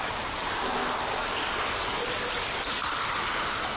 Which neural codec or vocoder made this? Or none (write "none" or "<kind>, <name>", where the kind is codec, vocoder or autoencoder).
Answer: none